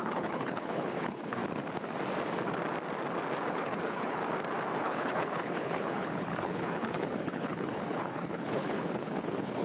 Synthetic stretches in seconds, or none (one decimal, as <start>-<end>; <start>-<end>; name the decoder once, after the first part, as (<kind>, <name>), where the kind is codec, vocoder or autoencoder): 0.0-1.4 (codec, HILCodec); 3.5-4.2; 4.8-9.6